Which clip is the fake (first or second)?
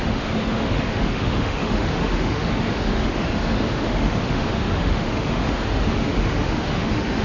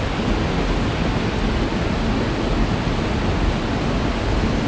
first